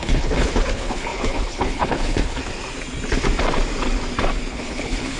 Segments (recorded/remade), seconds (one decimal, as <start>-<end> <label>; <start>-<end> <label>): 0.0-2.4 remade; 2.4-4.5 recorded; 4.5-5.2 remade

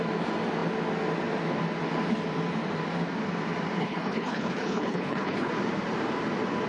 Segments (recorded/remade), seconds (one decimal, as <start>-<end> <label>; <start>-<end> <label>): 0.0-3.8 recorded; 3.8-5.5 remade; 5.5-6.7 recorded

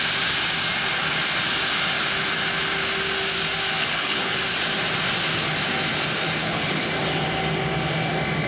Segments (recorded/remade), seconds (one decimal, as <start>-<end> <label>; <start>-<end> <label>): 0.0-3.8 recorded; 3.8-4.4 remade; 4.4-6.4 recorded; 6.4-6.9 remade; 6.9-8.5 recorded

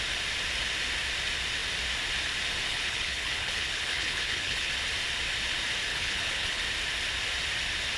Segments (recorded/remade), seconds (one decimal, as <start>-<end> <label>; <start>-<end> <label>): 0.0-2.7 recorded; 2.7-4.7 remade; 4.7-5.9 recorded; 5.9-6.6 remade; 6.6-8.0 recorded

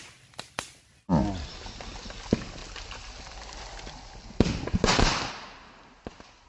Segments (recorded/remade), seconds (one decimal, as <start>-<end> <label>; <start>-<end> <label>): 0.0-6.5 recorded

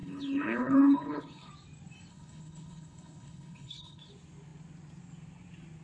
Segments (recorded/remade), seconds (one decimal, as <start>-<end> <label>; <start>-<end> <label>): 0.0-1.5 remade; 1.5-2.1 recorded; 2.1-4.1 remade; 4.1-5.8 recorded

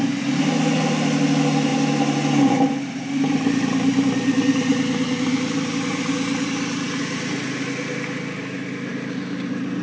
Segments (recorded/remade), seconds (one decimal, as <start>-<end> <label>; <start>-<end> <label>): 0.0-9.8 recorded